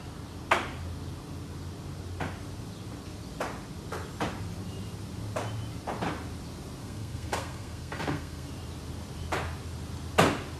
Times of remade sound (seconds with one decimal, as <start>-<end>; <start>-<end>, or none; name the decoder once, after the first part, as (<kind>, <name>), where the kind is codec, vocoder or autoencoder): 6.8-8.5 (codec, SNAC)